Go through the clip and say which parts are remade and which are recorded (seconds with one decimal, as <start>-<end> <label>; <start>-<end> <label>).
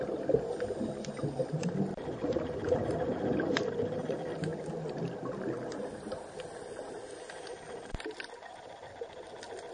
0.0-9.7 recorded